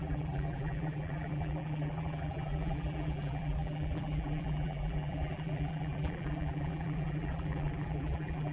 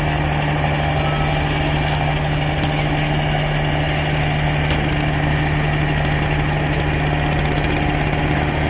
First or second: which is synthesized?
first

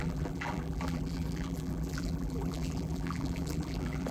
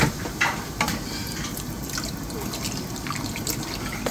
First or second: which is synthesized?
first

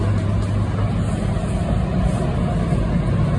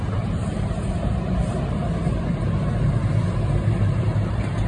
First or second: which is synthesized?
second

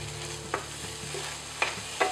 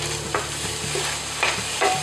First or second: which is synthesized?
second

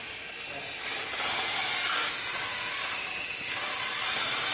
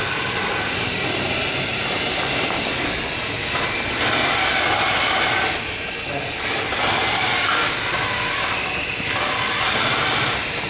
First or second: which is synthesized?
second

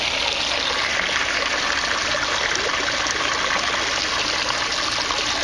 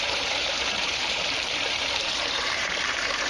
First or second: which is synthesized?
second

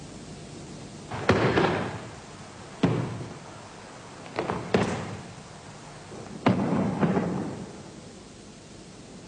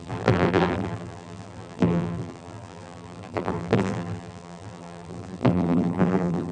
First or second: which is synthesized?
second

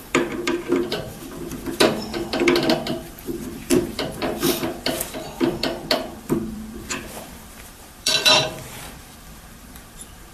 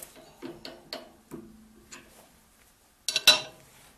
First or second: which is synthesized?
first